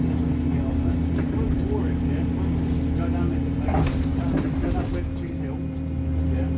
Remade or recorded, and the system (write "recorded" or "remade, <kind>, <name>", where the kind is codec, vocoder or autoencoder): recorded